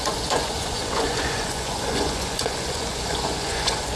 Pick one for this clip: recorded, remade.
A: remade